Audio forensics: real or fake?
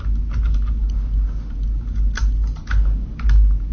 real